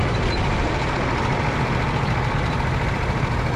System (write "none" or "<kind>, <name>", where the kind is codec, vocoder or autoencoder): none